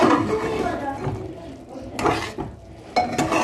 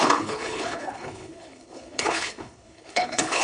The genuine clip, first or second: first